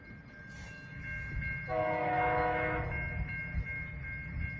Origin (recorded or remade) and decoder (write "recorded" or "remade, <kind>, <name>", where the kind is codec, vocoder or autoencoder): recorded